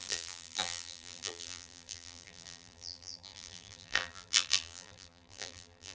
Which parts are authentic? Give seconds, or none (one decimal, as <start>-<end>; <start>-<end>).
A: none